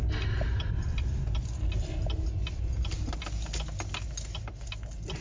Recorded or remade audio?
recorded